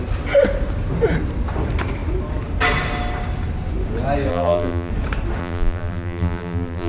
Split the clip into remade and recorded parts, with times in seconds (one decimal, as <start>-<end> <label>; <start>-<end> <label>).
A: 0.0-4.3 recorded; 4.3-4.9 remade; 4.9-5.4 recorded; 5.4-6.9 remade